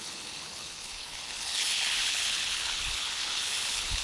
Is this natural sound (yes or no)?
no